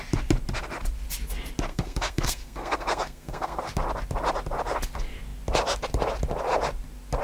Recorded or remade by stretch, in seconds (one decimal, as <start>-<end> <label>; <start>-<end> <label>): 0.0-1.7 recorded; 1.7-3.6 remade; 3.6-7.2 recorded